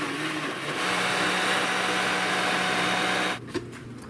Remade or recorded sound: recorded